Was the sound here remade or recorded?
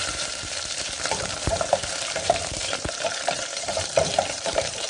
remade